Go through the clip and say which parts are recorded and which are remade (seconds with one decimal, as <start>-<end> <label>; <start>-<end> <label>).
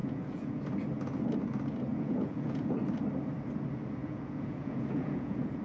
0.0-0.6 remade; 0.6-1.9 recorded; 1.9-2.8 remade; 2.8-4.0 recorded; 4.0-5.6 remade